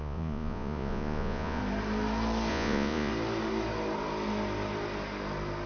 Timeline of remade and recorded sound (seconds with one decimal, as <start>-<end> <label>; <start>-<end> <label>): 0.0-1.6 remade; 1.6-2.5 recorded; 2.5-3.1 remade; 3.1-5.7 recorded